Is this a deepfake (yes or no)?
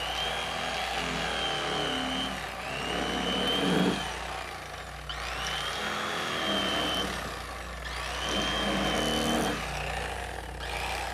no